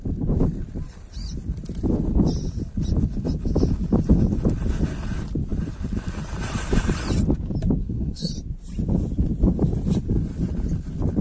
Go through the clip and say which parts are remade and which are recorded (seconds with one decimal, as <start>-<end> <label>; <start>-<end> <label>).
0.0-7.8 recorded; 7.8-8.3 remade; 8.3-11.2 recorded

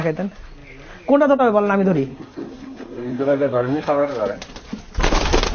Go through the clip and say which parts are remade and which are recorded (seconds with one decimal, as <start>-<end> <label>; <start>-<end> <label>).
0.0-2.1 recorded; 2.1-4.1 remade; 4.1-5.5 recorded

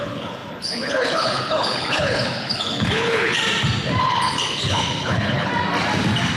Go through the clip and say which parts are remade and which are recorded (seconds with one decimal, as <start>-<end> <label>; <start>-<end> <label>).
0.0-3.4 remade; 3.4-4.0 recorded; 4.0-5.5 remade; 5.5-6.4 recorded

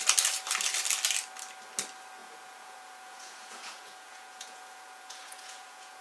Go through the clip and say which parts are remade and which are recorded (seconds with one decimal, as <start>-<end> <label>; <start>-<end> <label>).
0.0-2.2 recorded; 2.2-6.0 remade